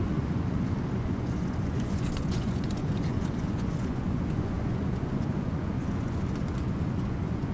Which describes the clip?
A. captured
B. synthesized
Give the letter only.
B